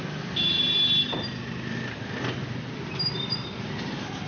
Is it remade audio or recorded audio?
recorded